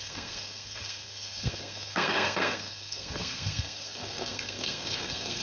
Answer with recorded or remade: remade